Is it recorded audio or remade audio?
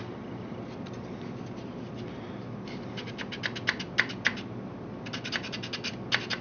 recorded